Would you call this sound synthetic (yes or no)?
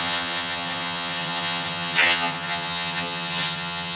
yes